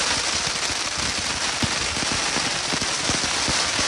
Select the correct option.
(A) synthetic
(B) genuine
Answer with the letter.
B